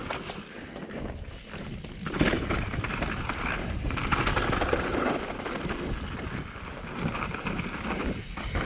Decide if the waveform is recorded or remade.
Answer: recorded